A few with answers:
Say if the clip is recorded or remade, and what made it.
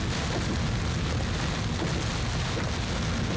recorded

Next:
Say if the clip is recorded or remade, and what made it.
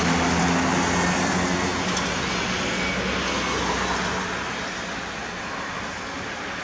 recorded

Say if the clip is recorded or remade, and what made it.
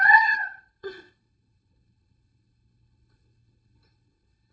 remade, codec, HILCodec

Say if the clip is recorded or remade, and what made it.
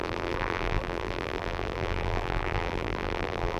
remade, vocoder, BigVGAN v2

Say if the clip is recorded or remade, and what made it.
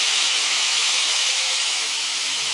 remade, autoencoder, DAC-VAE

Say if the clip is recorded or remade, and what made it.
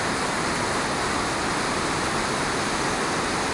recorded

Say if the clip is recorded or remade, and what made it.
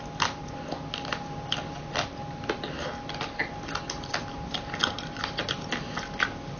recorded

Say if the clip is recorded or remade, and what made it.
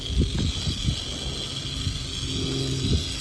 recorded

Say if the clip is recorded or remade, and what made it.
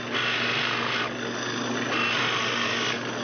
recorded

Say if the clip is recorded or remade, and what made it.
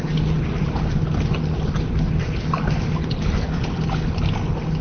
recorded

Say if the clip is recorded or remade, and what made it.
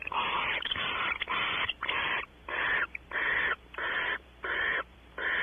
remade, vocoder, BigVGAN v2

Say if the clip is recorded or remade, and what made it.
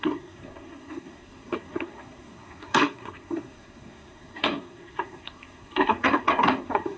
remade, codec, SNAC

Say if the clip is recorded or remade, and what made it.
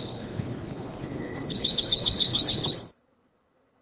remade, codec, HILCodec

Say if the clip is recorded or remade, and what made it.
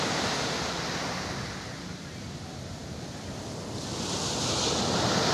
recorded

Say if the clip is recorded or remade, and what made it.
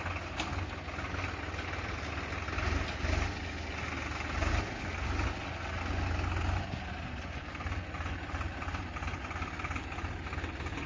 recorded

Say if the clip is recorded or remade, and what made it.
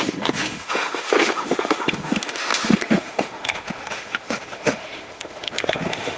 remade, autoencoder, DAC-VAE